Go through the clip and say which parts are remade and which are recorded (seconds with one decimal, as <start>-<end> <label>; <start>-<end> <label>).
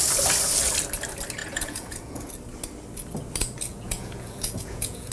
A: 0.0-1.4 recorded; 1.4-2.3 remade; 2.3-3.7 recorded; 3.7-5.1 remade